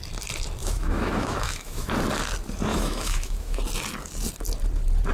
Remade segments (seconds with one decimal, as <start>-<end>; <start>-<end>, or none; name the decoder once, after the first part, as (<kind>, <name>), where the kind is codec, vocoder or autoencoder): 0.6-1.9 (autoencoder, DAC-VAE); 2.7-3.6